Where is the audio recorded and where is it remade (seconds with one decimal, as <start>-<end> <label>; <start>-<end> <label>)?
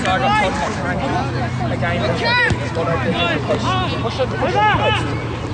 0.0-5.5 recorded